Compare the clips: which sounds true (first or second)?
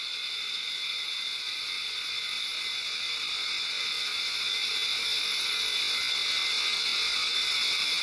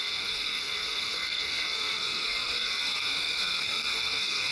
first